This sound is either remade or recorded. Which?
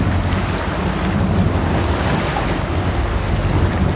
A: recorded